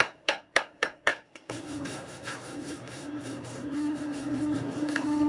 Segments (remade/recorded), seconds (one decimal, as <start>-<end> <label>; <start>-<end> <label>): 0.0-5.3 remade